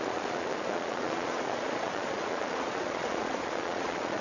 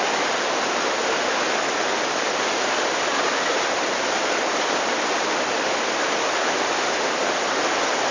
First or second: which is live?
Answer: second